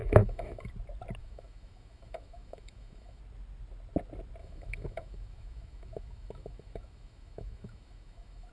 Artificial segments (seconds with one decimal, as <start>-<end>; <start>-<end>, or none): 0.0-0.7; 1.2-3.2; 4.4-8.5